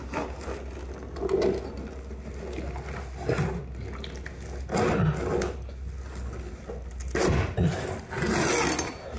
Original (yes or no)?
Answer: yes